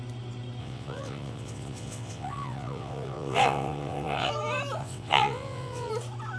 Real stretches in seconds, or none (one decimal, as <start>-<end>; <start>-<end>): 0.0-0.6; 4.3-4.8; 5.9-6.4